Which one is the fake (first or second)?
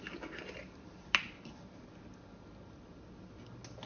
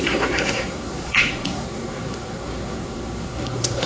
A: second